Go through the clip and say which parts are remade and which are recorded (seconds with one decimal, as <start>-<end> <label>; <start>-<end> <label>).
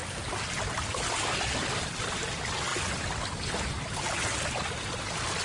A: 0.0-1.8 remade; 1.8-5.4 recorded